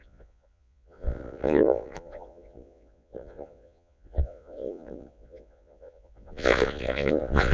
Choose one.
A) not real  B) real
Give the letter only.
A